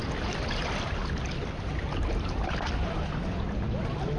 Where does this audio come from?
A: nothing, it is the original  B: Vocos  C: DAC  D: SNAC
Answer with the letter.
A